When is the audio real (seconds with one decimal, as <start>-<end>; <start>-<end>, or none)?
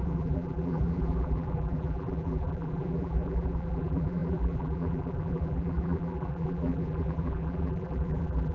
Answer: none